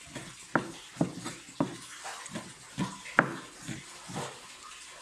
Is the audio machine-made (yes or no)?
no